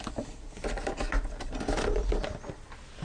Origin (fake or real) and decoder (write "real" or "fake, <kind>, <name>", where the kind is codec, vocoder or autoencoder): real